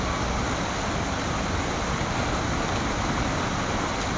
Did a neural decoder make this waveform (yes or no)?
no